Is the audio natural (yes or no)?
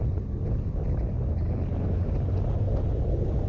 yes